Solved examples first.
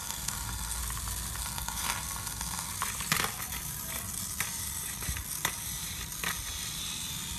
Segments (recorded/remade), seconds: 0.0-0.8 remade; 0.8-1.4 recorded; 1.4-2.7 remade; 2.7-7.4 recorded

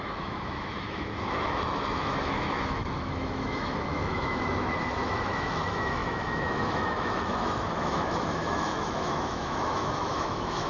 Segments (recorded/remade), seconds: 0.0-10.7 remade

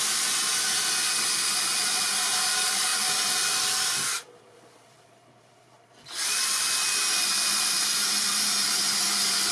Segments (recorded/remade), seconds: 0.0-9.5 recorded

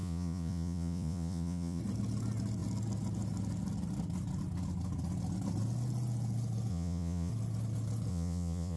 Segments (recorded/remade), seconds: 0.0-1.8 remade; 1.8-6.7 recorded; 6.7-7.3 remade; 7.3-8.1 recorded; 8.1-8.8 remade

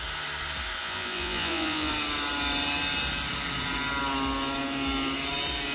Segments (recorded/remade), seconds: 0.0-0.8 recorded; 0.8-1.9 remade; 1.9-5.7 recorded